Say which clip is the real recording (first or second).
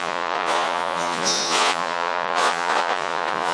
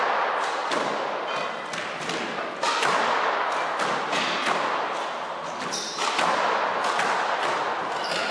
second